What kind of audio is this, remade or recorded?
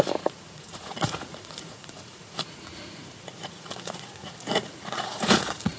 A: remade